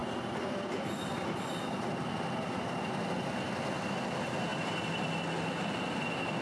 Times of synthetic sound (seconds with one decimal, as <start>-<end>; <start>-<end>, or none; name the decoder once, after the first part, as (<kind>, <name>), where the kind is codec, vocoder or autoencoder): none